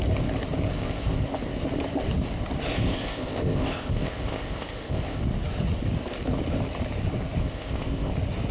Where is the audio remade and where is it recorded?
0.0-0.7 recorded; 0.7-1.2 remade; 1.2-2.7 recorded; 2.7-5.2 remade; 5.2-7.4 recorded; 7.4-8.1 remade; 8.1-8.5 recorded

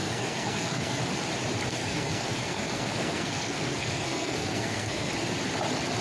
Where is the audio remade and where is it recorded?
0.0-1.0 remade; 1.0-1.7 recorded; 1.7-5.1 remade; 5.1-6.0 recorded

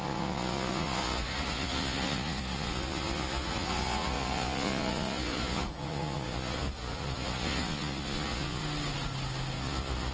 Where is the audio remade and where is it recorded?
0.0-8.6 remade; 8.6-9.6 recorded; 9.6-10.1 remade

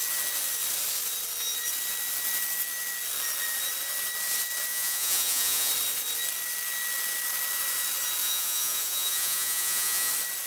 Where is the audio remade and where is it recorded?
0.0-4.7 recorded; 4.7-5.7 remade; 5.7-8.2 recorded; 8.2-10.1 remade; 10.1-10.5 recorded

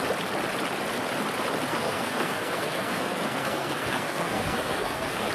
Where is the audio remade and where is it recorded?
0.0-1.7 recorded; 1.7-5.3 remade

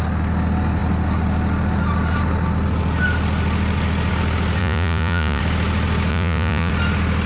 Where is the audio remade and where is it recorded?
0.0-4.6 recorded; 4.6-5.4 remade; 5.4-6.1 recorded; 6.1-6.7 remade; 6.7-7.3 recorded

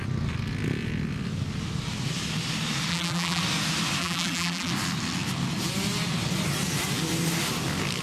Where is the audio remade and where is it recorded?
0.0-2.9 recorded; 2.9-3.4 remade; 3.4-4.0 recorded; 4.0-4.7 remade; 4.7-8.0 recorded